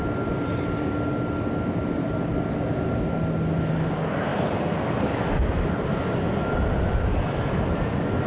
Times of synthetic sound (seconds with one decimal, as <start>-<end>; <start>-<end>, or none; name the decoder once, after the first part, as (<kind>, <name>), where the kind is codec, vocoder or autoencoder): none